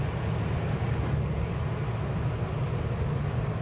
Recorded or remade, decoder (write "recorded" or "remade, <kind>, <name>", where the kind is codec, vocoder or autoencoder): recorded